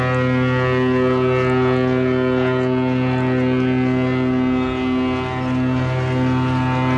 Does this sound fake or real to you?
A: real